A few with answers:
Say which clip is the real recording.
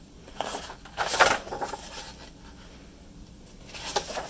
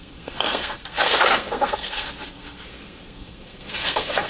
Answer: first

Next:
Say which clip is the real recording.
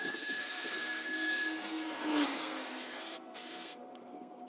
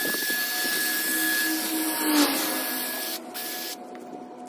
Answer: second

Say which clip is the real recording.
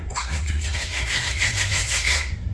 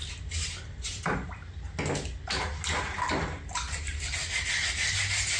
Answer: second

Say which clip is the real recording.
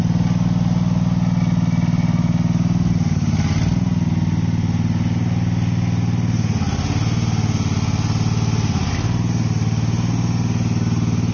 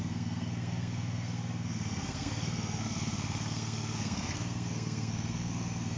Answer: first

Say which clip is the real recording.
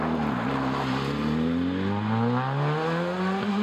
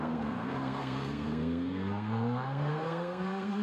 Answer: first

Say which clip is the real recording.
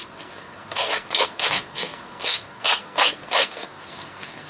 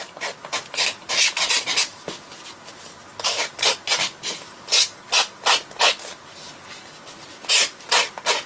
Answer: second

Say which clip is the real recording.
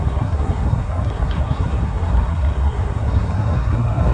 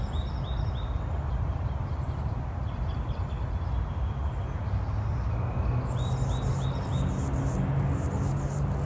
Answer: second